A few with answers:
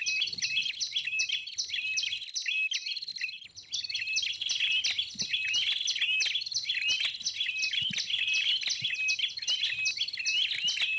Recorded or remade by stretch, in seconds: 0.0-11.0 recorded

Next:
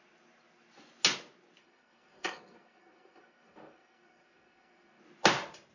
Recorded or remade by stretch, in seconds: 0.0-1.6 recorded; 1.6-5.0 remade; 5.0-5.7 recorded

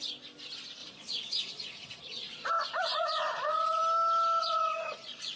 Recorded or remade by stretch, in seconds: 0.0-0.8 recorded; 0.8-2.5 remade; 2.5-2.9 recorded; 2.9-3.8 remade; 3.8-4.4 recorded; 4.4-5.4 remade

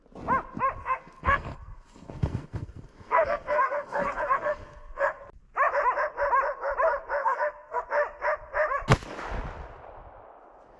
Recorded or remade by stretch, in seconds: 0.0-0.8 recorded; 0.8-5.2 remade; 5.2-7.2 recorded; 7.2-7.8 remade; 7.8-10.8 recorded

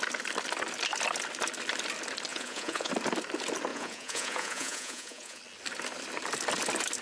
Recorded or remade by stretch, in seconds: 0.0-2.3 recorded; 2.3-2.9 remade; 2.9-3.7 recorded; 3.7-5.4 remade; 5.4-7.0 recorded

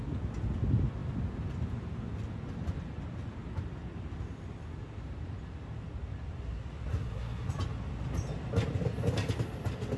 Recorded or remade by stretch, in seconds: 0.0-6.9 recorded; 6.9-7.5 remade; 7.5-10.0 recorded